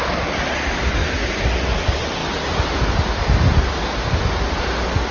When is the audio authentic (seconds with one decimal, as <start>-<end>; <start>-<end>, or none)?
0.0-5.1